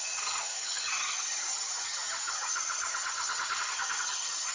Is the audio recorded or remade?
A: remade